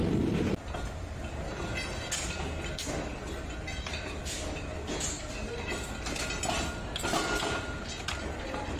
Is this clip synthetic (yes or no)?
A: no